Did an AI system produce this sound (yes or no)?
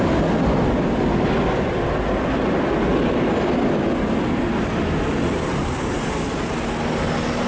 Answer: no